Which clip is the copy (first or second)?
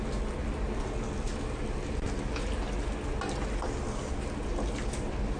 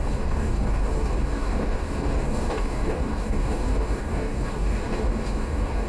second